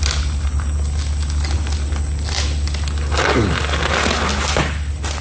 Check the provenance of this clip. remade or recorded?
recorded